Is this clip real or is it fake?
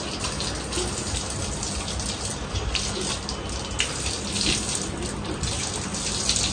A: real